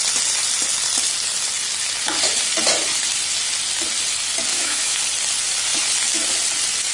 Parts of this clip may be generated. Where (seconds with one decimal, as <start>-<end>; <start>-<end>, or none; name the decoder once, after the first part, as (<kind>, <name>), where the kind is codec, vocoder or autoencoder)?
4.5-5.0 (autoencoder, DAC-VAE)